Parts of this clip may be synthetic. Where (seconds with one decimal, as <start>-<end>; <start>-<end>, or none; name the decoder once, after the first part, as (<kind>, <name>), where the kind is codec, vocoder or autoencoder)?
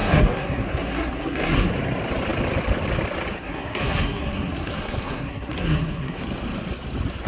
0.0-1.7 (codec, SNAC); 3.4-6.2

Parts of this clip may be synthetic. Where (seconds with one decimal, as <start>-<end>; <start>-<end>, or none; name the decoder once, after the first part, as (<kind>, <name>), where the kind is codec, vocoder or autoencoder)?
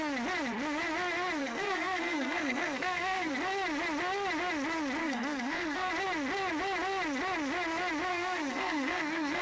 1.4-3.3 (codec, SNAC); 5.0-5.9; 8.1-9.4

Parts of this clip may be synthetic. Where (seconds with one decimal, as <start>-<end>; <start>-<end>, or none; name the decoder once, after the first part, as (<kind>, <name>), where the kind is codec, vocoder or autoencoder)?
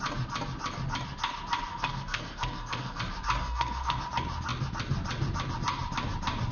1.7-3.0 (codec, SNAC); 3.4-4.0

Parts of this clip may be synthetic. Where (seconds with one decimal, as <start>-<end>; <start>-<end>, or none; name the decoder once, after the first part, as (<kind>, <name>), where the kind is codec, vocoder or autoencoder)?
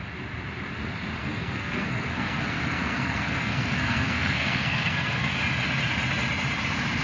1.2-5.4 (codec, SNAC)